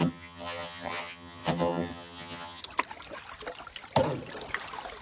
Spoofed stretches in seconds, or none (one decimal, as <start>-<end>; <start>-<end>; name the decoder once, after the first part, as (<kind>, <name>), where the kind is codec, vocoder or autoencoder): 0.0-2.6 (vocoder, HiFi-GAN)

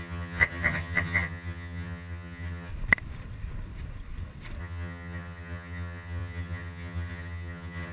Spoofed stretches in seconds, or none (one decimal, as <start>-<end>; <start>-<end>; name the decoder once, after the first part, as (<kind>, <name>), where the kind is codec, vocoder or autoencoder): 0.0-2.7 (vocoder, HiFi-GAN); 4.6-7.9

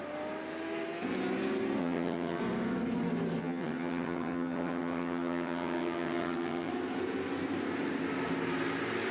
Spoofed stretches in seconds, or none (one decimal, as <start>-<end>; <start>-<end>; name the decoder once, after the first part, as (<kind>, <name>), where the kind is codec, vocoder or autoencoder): 1.8-2.4 (vocoder, HiFi-GAN); 3.4-6.7

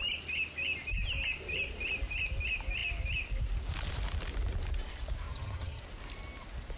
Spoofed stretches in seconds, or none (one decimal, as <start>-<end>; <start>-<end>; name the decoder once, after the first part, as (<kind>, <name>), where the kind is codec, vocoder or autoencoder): 5.3-5.8 (vocoder, HiFi-GAN)